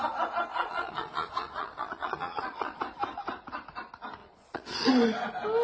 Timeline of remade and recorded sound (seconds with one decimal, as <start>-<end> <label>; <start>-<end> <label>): 0.0-0.5 recorded; 0.5-2.8 remade; 2.8-4.2 recorded; 4.2-4.9 remade; 4.9-5.6 recorded